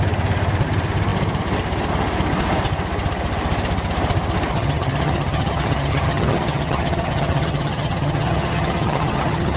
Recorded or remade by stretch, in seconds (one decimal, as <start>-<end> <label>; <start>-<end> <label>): 0.0-4.5 recorded; 4.5-9.6 remade